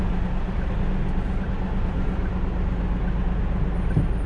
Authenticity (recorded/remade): recorded